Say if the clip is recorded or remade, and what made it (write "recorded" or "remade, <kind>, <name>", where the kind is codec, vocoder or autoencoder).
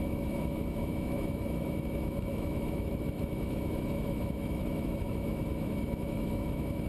remade, autoencoder, DAC-VAE